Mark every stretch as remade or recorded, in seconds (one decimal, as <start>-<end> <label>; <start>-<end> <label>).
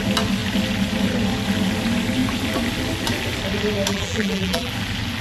0.0-3.9 recorded; 3.9-4.7 remade; 4.7-5.2 recorded